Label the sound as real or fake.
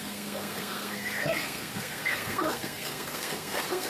fake